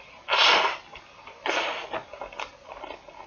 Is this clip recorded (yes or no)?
yes